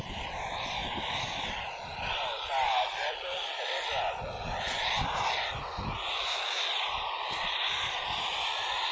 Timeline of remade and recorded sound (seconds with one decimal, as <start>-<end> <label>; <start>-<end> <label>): 0.0-8.9 recorded